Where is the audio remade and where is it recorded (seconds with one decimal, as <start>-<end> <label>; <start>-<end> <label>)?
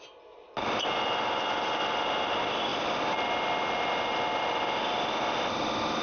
0.0-6.0 recorded